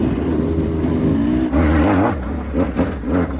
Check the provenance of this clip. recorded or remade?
recorded